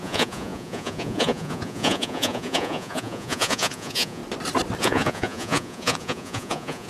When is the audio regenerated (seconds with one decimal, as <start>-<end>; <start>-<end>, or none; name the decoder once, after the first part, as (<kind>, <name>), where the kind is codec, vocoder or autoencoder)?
0.0-4.2 (vocoder, Vocos); 4.8-6.9